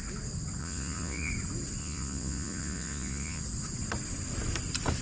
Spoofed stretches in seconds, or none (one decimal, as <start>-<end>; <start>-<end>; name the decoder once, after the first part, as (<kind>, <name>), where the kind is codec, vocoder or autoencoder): 0.6-1.3 (vocoder, Vocos); 1.8-3.4